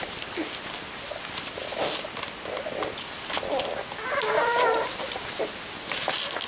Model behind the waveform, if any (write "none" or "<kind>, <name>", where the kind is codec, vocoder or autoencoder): none